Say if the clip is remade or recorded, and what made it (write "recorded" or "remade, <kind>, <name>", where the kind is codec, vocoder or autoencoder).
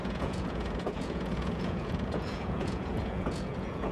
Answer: remade, vocoder, Vocos